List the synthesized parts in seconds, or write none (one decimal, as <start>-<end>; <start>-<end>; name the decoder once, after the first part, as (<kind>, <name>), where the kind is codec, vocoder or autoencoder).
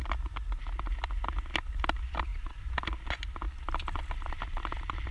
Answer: none